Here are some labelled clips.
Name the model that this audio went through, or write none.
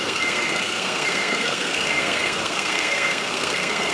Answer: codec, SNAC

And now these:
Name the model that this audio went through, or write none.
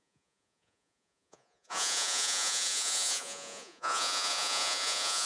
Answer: vocoder, Vocos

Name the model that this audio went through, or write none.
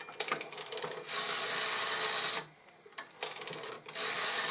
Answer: none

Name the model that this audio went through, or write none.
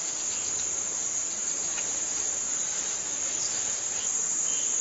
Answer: none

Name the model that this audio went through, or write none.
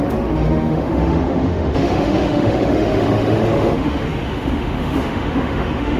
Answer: autoencoder, DAC-VAE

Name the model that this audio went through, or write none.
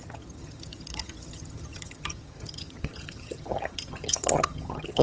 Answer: vocoder, HiFi-GAN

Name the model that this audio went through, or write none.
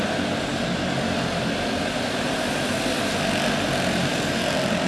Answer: none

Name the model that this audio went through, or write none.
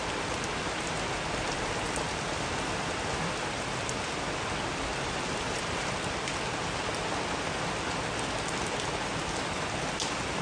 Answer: none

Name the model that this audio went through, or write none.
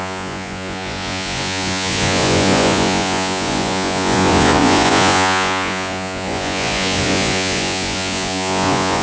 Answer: vocoder, Vocos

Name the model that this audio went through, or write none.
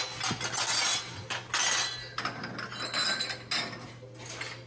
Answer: none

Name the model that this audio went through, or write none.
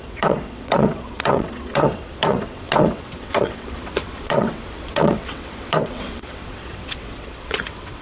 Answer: vocoder, WaveNeXt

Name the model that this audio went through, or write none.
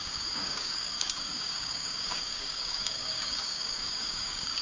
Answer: codec, DAC